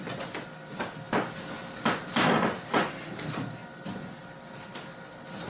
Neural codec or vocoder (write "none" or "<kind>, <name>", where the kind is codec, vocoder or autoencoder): none